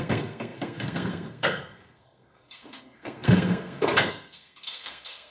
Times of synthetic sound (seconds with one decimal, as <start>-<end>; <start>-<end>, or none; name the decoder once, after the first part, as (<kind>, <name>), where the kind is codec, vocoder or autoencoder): 0.0-5.3 (codec, SNAC)